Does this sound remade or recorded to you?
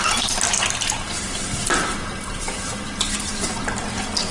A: recorded